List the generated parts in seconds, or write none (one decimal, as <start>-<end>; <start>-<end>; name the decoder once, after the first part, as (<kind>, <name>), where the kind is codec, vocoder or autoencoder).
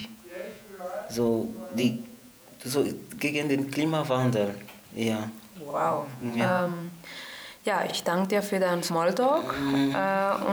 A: 0.0-0.8 (vocoder, Vocos); 1.5-2.5; 5.7-6.9